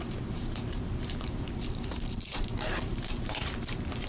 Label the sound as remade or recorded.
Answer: remade